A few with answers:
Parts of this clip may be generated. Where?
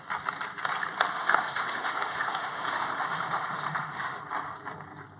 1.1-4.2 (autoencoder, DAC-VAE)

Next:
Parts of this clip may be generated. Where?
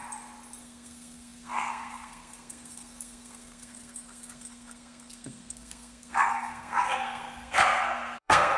0.6-8.6 (codec, SNAC)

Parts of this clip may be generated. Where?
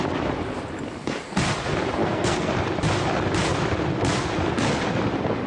2.0-2.5 (codec, SNAC)